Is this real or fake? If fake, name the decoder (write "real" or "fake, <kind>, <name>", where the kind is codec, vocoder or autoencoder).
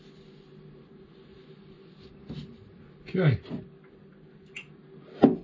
real